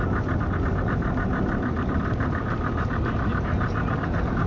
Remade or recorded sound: recorded